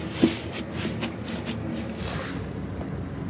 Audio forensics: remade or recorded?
recorded